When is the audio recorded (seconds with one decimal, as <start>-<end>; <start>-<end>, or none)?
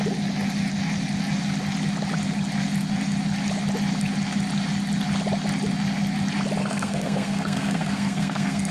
0.0-6.6